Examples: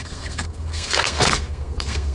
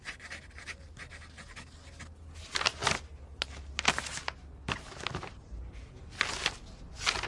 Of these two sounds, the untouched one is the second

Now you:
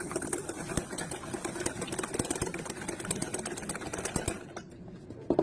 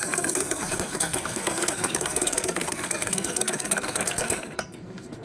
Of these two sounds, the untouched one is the first